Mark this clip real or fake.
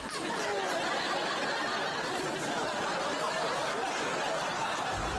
real